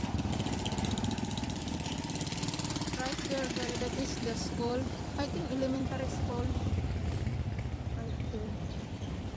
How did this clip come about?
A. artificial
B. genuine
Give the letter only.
A